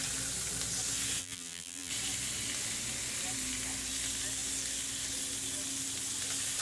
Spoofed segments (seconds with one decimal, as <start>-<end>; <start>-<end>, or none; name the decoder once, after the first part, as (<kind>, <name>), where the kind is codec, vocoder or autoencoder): 1.2-1.9 (vocoder, BigVGAN v2)